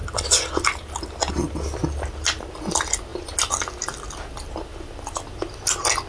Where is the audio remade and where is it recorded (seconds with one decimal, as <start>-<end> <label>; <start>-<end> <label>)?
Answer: 0.0-6.1 recorded